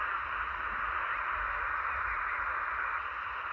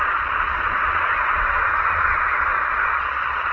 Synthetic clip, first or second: second